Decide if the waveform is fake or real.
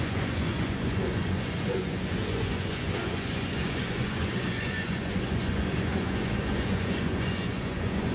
fake